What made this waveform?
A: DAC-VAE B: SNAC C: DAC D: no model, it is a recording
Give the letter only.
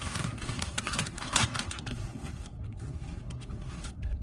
B